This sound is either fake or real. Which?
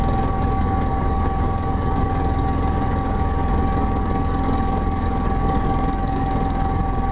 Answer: fake